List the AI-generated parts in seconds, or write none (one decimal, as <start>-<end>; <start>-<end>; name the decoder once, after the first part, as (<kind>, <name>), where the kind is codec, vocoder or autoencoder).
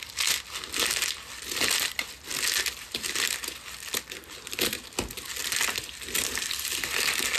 none